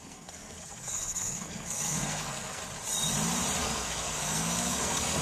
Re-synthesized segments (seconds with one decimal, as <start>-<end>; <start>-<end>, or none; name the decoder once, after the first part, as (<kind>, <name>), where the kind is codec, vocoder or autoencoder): 0.0-2.6 (codec, SNAC); 3.6-5.2